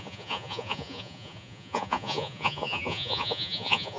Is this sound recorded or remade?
remade